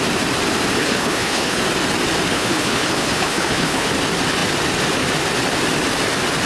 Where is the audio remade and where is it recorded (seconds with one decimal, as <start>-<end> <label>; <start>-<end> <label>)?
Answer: 0.0-0.8 recorded; 0.8-1.6 remade; 1.6-2.3 recorded; 2.3-3.9 remade; 3.9-6.5 recorded